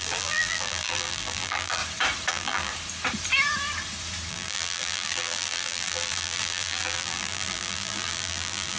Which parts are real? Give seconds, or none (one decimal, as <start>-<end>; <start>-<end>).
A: 1.8-2.3; 2.7-4.3